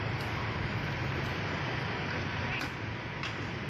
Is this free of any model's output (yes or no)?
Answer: yes